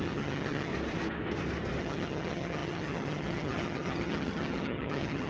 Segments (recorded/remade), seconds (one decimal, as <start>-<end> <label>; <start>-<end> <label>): 0.0-0.7 remade; 0.7-1.8 recorded; 1.8-5.3 remade